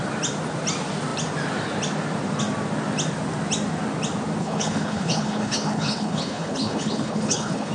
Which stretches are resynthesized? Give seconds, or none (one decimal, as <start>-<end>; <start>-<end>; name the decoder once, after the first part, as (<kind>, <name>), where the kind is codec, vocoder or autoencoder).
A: 4.4-7.7 (codec, HILCodec)